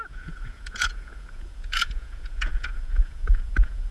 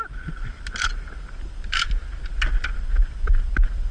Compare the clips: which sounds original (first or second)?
second